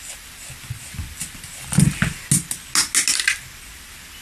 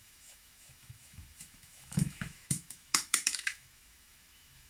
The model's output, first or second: second